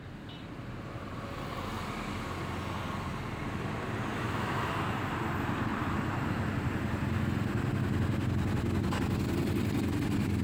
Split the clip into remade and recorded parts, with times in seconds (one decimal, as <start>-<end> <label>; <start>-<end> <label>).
0.0-4.1 recorded; 4.1-4.6 remade; 4.6-10.4 recorded